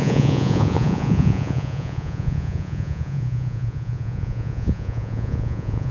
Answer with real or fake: fake